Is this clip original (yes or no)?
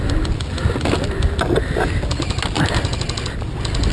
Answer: yes